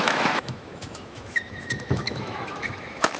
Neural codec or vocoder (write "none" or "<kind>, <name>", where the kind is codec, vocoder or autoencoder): autoencoder, DAC-VAE